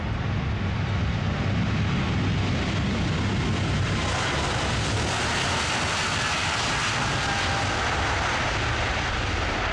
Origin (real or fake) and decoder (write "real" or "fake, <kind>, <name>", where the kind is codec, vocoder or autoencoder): real